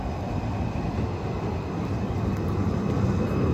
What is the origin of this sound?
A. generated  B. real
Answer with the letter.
B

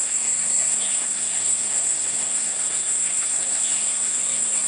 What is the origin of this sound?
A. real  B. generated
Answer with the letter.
B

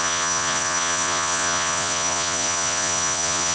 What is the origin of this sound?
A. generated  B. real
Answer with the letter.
A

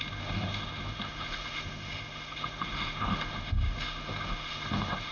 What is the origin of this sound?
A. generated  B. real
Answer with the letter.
A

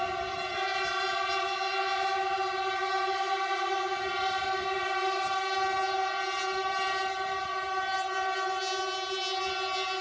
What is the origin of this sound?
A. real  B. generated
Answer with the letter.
A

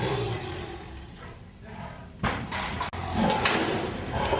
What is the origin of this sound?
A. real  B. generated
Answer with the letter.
A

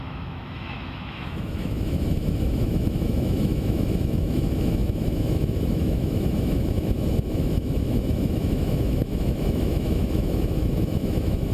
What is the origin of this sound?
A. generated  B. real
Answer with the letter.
A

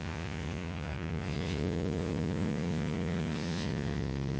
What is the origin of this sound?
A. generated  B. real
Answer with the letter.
A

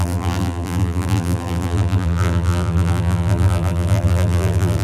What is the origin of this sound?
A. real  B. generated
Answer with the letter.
B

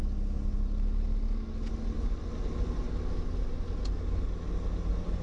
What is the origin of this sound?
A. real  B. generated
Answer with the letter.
A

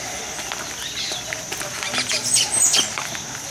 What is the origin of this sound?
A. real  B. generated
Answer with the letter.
A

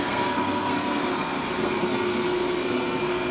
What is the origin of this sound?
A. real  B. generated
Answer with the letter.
B